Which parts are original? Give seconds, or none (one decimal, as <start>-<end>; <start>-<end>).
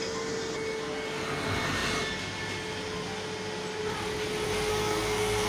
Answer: 0.0-4.7